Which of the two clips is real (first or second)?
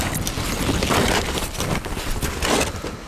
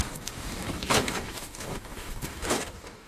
first